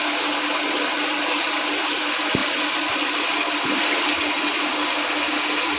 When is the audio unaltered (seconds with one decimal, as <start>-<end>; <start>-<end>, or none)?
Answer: 0.0-5.8